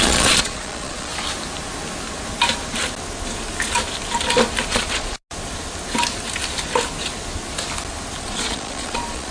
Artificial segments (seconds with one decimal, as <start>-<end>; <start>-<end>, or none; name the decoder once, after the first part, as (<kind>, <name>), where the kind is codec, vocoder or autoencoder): 0.0-1.1 (vocoder, Vocos); 4.7-5.2; 8.2-9.3